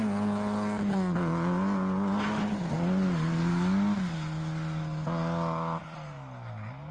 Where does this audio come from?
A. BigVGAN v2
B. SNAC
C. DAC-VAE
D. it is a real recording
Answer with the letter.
D